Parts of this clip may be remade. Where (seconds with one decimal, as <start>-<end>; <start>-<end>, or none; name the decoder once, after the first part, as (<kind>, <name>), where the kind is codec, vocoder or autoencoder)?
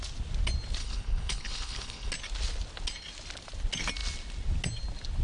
0.8-2.1 (codec, HILCodec)